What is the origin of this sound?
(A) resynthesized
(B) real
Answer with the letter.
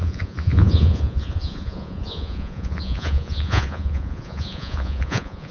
A